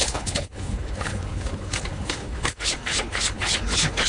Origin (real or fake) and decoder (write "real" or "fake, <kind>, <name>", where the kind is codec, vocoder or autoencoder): fake, codec, HILCodec